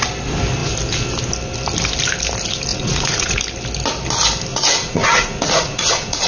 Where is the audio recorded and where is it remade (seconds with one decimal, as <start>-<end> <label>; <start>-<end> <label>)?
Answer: 0.0-2.7 recorded; 2.7-3.4 remade; 3.4-4.5 recorded; 4.5-6.3 remade